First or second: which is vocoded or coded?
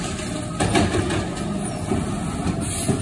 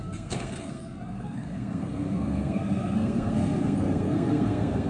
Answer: second